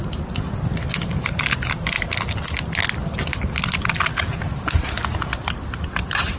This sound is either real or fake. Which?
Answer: real